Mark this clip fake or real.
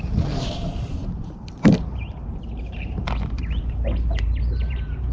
fake